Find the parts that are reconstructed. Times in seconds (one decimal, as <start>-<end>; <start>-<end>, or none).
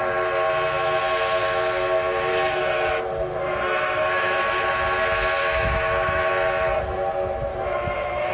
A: 2.3-4.4; 5.4-6.3; 7.5-8.3